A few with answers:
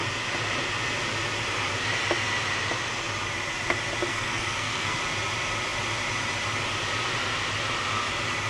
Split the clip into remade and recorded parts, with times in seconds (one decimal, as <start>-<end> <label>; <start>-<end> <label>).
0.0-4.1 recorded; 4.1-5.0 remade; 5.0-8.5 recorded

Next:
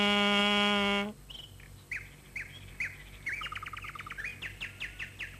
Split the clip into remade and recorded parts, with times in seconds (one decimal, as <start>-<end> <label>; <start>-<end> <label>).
0.0-5.4 recorded

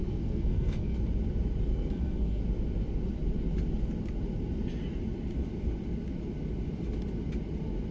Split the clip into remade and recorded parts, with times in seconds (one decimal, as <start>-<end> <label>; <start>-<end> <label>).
0.0-1.0 remade; 1.0-1.7 recorded; 1.7-2.4 remade; 2.4-7.9 recorded

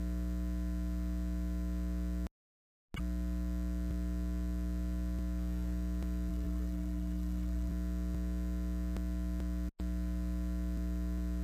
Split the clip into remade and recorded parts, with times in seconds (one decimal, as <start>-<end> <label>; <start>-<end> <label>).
0.0-6.3 recorded; 6.3-7.7 remade; 7.7-11.4 recorded

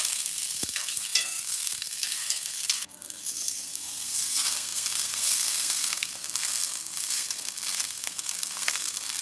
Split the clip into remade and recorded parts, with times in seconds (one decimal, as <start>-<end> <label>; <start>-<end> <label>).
0.0-9.2 remade

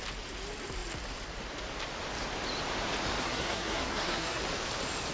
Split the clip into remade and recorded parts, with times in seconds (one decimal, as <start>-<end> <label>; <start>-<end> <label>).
0.0-3.2 recorded; 3.2-4.4 remade; 4.4-5.1 recorded